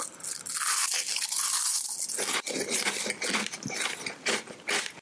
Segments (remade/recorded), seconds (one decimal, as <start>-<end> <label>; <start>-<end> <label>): 0.0-5.0 recorded